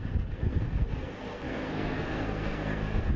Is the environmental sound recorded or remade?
remade